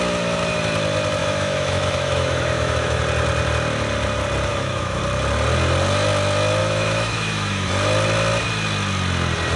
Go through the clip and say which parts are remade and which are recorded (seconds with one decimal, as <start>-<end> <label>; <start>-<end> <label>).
0.0-1.2 recorded; 1.2-3.0 remade; 3.0-4.5 recorded; 4.5-5.0 remade; 5.0-6.6 recorded; 6.6-7.7 remade; 7.7-9.6 recorded